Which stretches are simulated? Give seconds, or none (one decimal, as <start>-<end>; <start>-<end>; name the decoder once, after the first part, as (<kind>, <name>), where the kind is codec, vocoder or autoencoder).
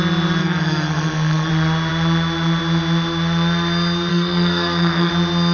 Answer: 0.4-1.5 (codec, SNAC); 4.1-5.1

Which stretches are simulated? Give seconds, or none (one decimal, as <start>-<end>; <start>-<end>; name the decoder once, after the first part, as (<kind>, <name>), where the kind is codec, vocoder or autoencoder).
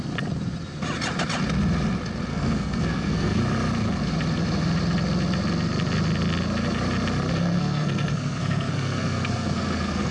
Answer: 2.3-3.4 (codec, SNAC); 7.3-10.1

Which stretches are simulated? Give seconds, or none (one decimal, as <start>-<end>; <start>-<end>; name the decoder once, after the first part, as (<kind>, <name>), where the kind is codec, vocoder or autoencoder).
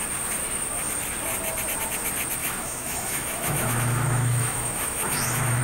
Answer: 2.4-5.6 (autoencoder, DAC-VAE)